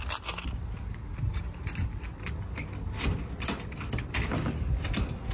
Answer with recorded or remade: recorded